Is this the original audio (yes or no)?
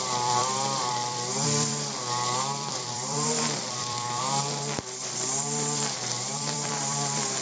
no